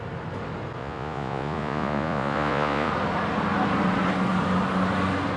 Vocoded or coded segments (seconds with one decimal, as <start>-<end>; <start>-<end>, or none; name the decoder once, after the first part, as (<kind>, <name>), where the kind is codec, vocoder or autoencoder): 0.8-2.9 (vocoder, Vocos)